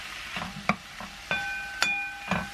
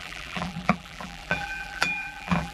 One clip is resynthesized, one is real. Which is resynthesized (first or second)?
second